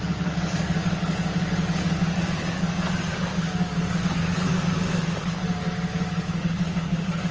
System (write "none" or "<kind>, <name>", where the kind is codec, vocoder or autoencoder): codec, DAC